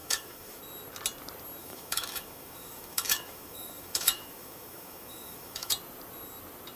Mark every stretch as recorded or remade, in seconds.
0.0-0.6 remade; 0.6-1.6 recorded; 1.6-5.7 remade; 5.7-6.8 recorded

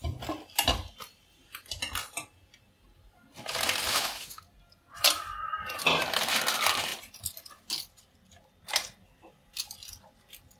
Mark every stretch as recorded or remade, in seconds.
0.0-3.9 recorded; 3.9-4.4 remade; 4.4-10.6 recorded

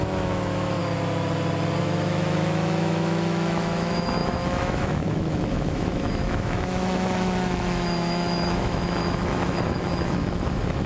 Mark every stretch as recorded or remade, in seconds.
0.0-0.8 remade; 0.8-1.8 recorded; 1.8-10.9 remade

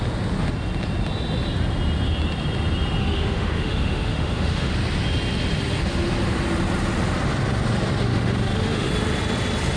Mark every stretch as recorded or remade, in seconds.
0.0-3.0 recorded; 3.0-4.7 remade; 4.7-8.1 recorded; 8.1-8.9 remade; 8.9-9.8 recorded

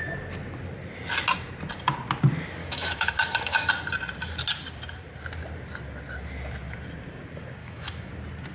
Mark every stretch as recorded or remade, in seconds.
0.0-2.6 recorded; 2.6-3.7 remade; 3.7-7.6 recorded; 7.6-8.1 remade; 8.1-8.5 recorded